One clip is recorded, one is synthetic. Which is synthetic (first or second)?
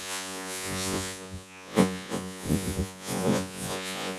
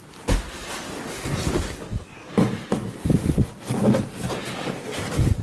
first